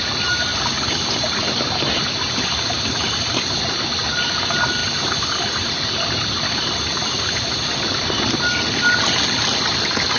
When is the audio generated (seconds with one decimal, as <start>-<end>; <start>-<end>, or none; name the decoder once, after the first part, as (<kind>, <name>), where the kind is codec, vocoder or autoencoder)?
none

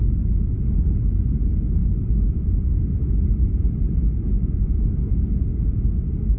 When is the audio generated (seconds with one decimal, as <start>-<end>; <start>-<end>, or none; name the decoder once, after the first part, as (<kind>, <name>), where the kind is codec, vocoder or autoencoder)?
1.8-2.7 (vocoder, Vocos); 4.3-5.9

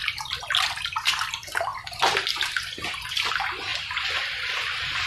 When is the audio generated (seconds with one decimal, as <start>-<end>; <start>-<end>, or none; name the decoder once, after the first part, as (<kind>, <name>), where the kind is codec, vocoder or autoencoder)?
3.7-5.1 (vocoder, BigVGAN v2)

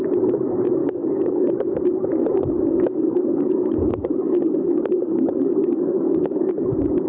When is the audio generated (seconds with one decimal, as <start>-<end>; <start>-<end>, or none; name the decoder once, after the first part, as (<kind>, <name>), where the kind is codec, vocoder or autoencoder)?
0.8-1.5 (codec, DAC); 2.2-6.5